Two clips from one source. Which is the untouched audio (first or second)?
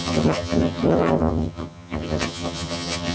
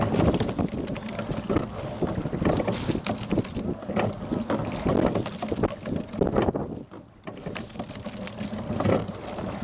second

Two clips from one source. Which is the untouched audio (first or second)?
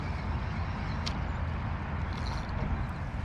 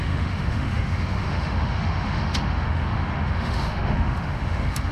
first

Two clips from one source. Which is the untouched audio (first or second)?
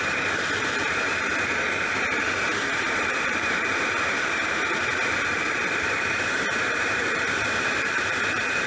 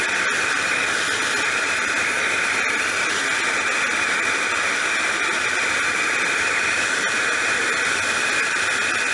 second